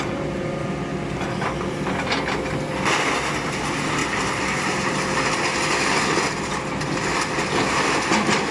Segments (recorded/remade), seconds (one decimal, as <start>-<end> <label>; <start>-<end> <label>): 0.0-8.5 recorded